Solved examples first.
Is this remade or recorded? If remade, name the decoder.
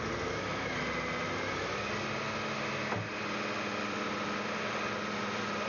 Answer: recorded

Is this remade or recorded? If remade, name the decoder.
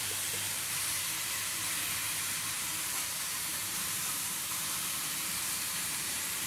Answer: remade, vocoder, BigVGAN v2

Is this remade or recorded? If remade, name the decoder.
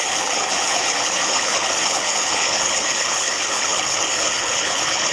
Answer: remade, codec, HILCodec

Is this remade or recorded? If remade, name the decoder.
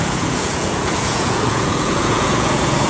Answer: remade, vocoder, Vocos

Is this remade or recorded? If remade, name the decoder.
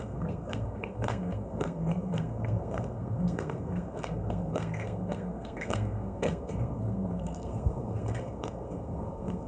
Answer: remade, codec, SNAC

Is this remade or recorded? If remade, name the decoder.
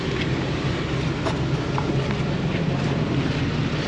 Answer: recorded